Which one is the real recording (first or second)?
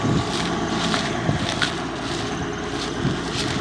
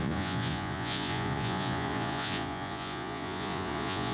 first